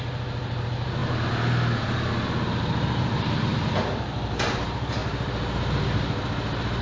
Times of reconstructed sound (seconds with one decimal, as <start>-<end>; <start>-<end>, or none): none